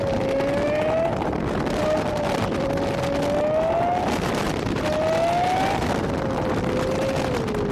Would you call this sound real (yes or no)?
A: yes